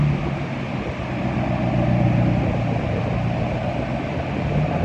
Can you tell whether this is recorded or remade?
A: recorded